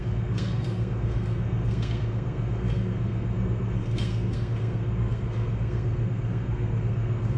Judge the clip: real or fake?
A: fake